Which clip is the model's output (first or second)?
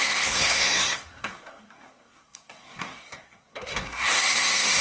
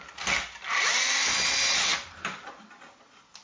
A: first